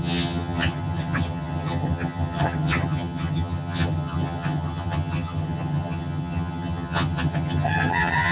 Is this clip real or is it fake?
fake